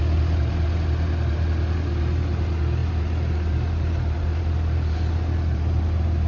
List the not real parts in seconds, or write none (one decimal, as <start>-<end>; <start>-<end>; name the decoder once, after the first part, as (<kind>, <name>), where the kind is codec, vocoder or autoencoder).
none